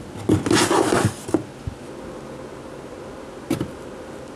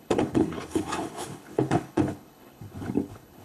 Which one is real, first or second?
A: first